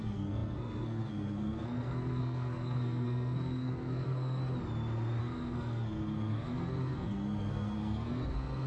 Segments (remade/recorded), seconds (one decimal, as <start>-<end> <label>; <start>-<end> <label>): 0.0-4.4 remade; 4.4-5.2 recorded; 5.2-8.7 remade